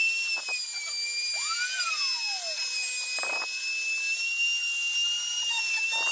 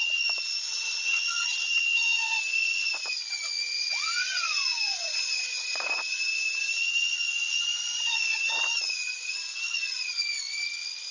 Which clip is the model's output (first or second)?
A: second